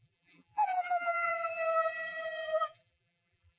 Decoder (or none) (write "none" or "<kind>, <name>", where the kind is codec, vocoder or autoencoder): vocoder, BigVGAN v2